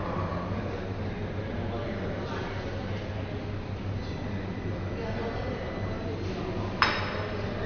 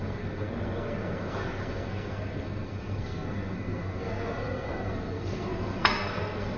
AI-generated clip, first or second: second